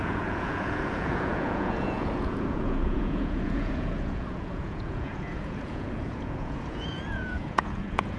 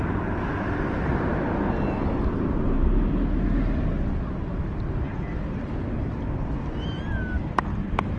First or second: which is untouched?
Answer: second